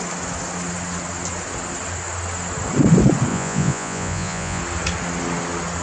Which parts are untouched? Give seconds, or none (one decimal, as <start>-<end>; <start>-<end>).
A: 0.0-3.3; 4.6-5.8